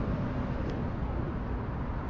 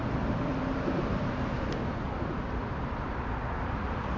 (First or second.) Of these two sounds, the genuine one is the first